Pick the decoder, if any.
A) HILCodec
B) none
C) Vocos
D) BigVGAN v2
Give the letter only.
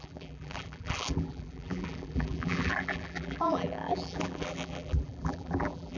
D